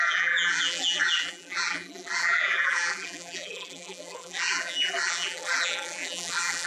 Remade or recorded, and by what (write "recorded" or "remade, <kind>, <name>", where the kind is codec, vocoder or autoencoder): remade, vocoder, BigVGAN v2